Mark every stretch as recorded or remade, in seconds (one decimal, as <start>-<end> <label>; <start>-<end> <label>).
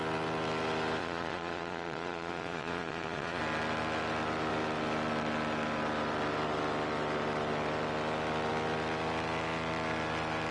0.0-1.0 recorded; 1.0-3.4 remade; 3.4-10.5 recorded